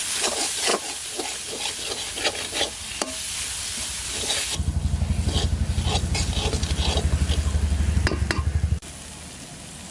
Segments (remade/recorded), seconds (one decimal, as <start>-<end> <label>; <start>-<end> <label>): 0.0-9.9 recorded